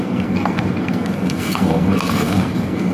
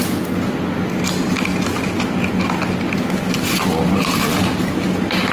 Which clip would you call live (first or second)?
second